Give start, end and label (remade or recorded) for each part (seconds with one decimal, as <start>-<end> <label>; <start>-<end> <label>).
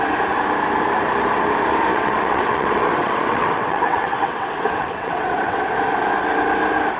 0.0-1.9 recorded; 1.9-5.7 remade; 5.7-7.0 recorded